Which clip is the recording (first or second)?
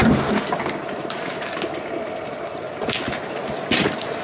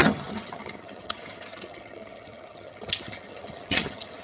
first